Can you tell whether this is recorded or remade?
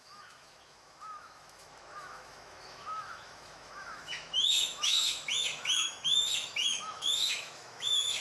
remade